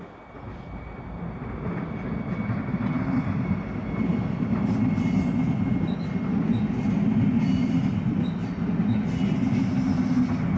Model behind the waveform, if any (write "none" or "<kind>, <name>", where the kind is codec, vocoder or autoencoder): none